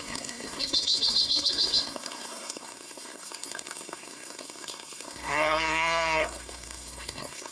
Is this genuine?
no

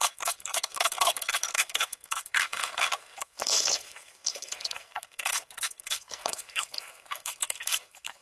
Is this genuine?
no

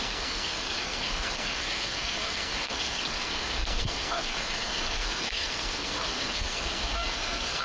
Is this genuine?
no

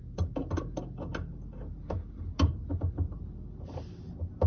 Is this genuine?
yes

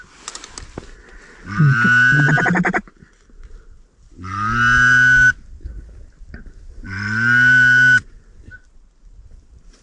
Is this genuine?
yes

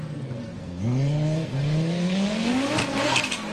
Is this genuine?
no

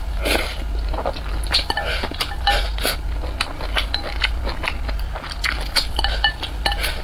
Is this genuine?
yes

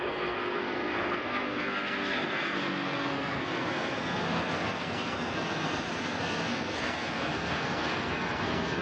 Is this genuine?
no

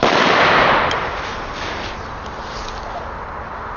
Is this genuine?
yes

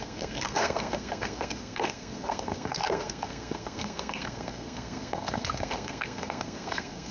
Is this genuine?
no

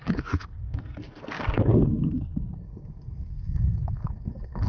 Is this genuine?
no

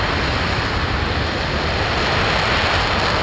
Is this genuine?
yes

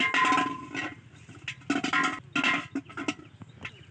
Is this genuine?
yes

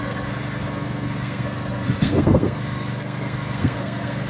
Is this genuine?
no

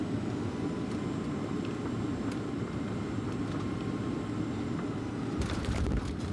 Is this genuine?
yes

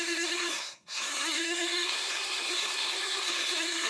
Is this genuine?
no